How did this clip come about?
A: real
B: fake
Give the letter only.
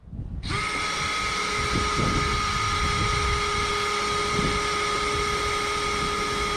A